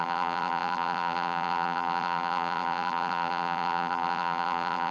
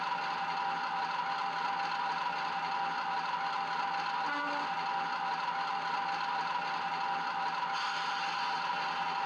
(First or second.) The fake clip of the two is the first